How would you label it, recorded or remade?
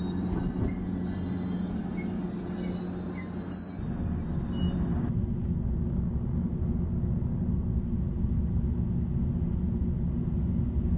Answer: recorded